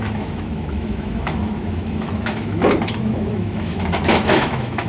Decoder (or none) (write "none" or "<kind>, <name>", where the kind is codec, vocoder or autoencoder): autoencoder, DAC-VAE